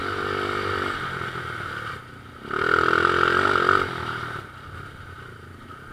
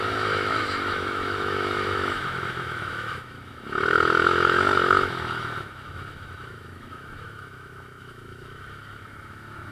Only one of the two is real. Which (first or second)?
first